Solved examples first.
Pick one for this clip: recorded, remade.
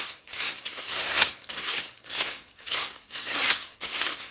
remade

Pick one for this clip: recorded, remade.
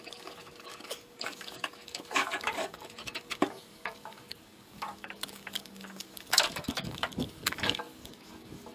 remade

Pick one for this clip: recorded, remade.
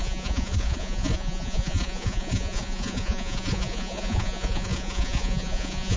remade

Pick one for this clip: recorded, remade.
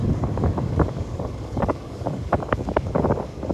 remade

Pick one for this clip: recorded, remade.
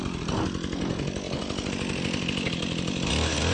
recorded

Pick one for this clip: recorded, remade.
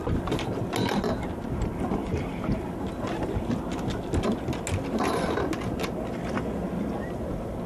recorded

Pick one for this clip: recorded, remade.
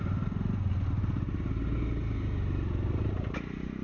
recorded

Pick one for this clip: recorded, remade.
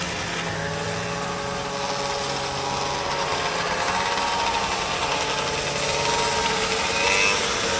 recorded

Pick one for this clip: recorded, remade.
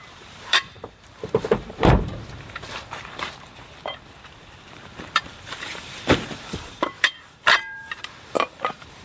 remade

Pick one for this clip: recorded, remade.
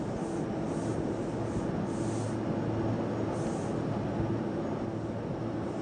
recorded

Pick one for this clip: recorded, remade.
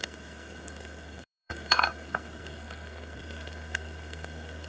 remade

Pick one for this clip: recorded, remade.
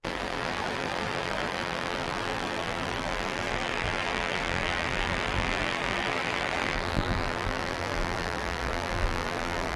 remade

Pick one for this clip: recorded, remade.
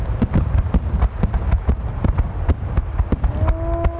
recorded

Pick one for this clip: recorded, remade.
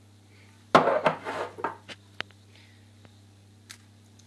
recorded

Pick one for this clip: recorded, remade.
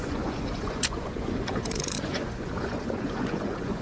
remade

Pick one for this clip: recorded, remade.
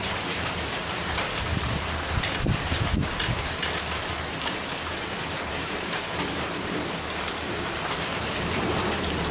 remade